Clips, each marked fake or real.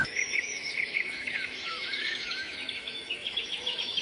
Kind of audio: fake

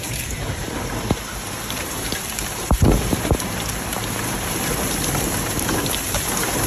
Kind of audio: fake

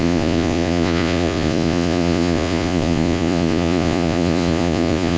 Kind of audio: fake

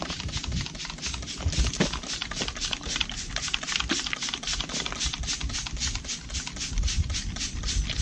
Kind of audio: real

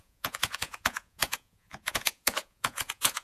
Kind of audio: fake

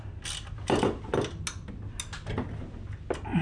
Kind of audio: real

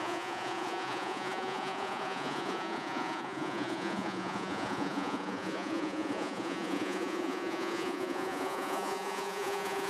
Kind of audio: fake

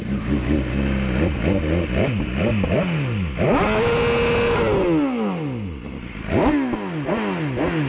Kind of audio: real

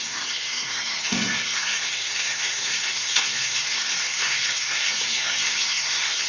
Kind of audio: fake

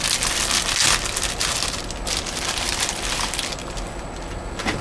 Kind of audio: real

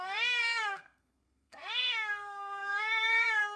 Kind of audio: fake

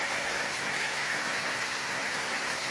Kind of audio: fake